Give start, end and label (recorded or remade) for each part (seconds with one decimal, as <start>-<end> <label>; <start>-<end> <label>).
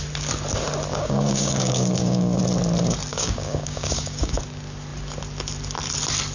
0.0-0.9 recorded; 0.9-2.4 remade; 2.4-3.1 recorded; 3.1-4.4 remade; 4.4-6.3 recorded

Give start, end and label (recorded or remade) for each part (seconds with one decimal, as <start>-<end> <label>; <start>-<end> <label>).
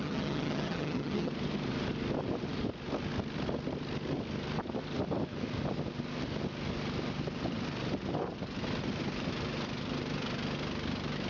0.0-1.3 remade; 1.3-11.3 recorded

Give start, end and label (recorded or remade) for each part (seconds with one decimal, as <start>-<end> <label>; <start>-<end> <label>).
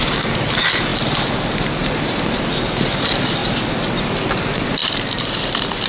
0.0-5.9 recorded